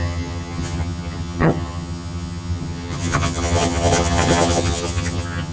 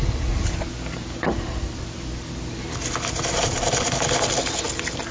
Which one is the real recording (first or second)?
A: second